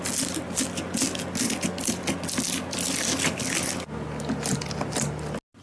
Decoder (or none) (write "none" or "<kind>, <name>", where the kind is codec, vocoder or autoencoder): none